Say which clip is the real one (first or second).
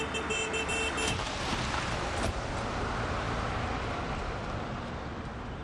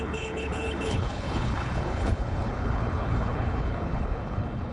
first